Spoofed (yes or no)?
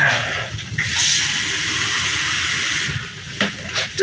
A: no